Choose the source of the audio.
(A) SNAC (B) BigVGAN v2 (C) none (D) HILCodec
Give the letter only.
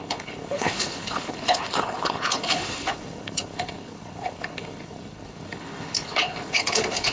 D